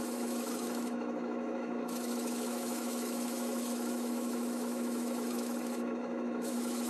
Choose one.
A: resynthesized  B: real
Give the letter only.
A